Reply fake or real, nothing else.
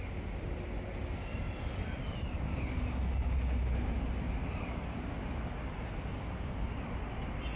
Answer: real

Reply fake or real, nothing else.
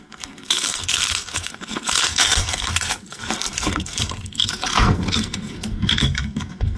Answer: fake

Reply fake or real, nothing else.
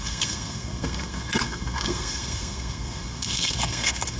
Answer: fake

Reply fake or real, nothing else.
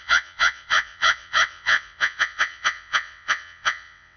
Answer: fake